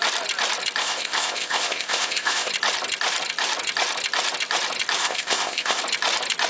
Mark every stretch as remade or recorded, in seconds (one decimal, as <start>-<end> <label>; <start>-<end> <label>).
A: 0.0-0.8 recorded; 0.8-2.5 remade; 2.5-5.0 recorded; 5.0-5.8 remade; 5.8-6.5 recorded